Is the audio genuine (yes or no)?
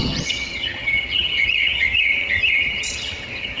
no